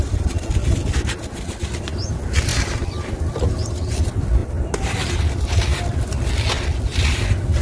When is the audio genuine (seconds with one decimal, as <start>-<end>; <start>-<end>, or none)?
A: 0.0-4.4; 5.8-7.6